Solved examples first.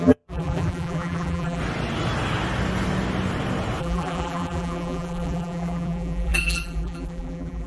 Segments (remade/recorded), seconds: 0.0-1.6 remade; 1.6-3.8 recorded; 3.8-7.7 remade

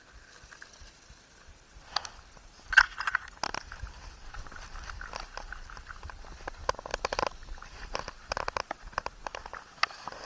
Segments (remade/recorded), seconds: 0.0-10.2 recorded

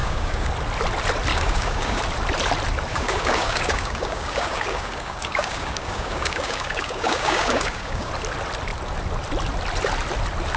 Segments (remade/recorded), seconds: 0.0-0.5 remade; 0.5-1.3 recorded; 1.3-2.0 remade; 2.0-2.9 recorded; 2.9-8.1 remade; 8.1-10.6 recorded